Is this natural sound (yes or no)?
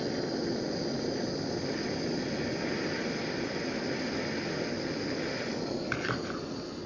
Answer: yes